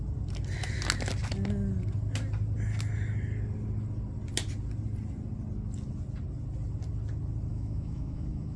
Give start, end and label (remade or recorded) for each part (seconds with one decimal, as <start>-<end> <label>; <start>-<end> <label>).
0.0-7.5 recorded; 7.5-8.6 remade

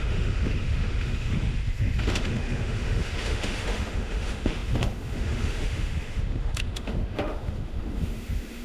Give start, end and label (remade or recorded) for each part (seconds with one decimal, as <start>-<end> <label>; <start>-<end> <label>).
0.0-8.6 remade

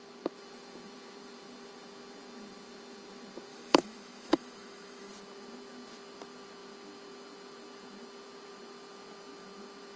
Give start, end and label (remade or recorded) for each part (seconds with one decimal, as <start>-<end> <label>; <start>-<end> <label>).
0.0-3.5 recorded; 3.5-5.1 remade; 5.1-10.0 recorded